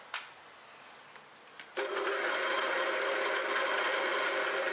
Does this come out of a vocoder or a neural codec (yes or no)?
no